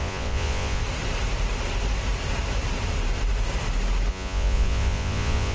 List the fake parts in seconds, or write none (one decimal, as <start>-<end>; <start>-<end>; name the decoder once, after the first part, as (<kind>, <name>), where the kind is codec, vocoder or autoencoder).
0.0-0.8 (vocoder, Vocos); 4.1-5.5

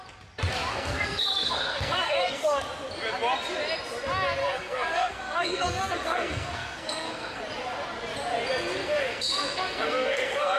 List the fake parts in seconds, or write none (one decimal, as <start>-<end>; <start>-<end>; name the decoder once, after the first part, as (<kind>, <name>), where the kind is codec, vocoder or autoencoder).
0.7-2.6 (codec, SNAC); 4.4-7.4; 8.8-10.6

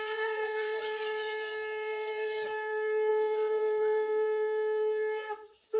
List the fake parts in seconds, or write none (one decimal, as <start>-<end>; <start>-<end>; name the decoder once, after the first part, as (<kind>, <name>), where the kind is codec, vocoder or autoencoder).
0.0-5.8 (vocoder, WaveNeXt)

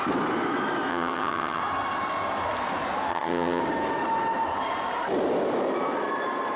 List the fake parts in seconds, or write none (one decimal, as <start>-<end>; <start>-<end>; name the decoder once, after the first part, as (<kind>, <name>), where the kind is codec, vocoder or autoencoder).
0.9-1.6 (vocoder, HiFi-GAN); 3.1-3.6

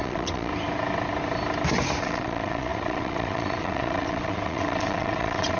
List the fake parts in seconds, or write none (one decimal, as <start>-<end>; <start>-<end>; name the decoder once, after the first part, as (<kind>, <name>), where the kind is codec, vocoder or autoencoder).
0.0-0.5 (vocoder, WaveNeXt); 2.0-5.6

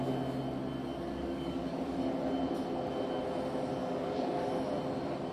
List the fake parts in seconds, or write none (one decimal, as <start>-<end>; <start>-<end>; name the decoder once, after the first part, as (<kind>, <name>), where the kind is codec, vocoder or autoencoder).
0.8-2.0 (codec, DAC); 3.8-4.5